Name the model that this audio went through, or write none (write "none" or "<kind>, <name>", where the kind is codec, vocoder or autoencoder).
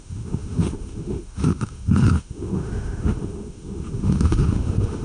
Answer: autoencoder, DAC-VAE